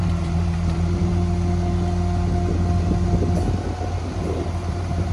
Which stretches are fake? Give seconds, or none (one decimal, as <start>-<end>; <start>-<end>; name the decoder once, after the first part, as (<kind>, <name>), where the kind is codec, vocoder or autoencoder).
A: 0.0-1.1 (vocoder, BigVGAN v2); 4.2-5.1